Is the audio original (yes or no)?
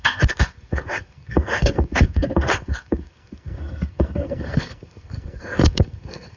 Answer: no